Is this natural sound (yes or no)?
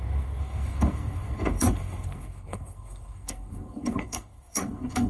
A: no